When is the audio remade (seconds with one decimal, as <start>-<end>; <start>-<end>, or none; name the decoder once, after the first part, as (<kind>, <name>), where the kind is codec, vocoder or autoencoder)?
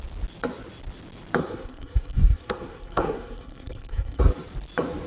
1.4-4.2 (codec, SNAC)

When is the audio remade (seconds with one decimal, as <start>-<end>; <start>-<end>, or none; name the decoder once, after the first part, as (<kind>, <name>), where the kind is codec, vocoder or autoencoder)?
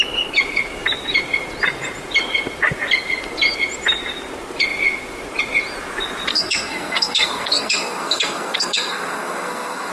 6.3-9.9 (codec, SNAC)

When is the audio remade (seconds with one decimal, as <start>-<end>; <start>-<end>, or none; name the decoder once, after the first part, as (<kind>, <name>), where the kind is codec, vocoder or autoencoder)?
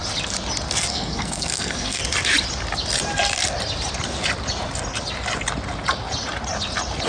0.9-2.0 (codec, SNAC)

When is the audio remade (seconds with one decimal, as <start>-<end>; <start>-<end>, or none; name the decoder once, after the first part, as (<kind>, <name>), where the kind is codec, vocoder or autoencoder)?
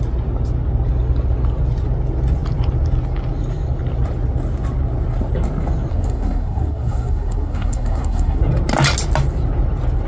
5.9-8.4 (codec, SNAC)